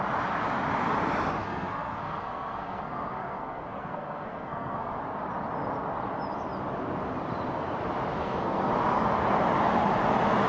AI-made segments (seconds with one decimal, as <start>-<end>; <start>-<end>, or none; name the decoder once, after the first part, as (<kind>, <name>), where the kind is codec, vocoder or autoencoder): 1.4-5.0 (codec, SNAC); 8.2-8.7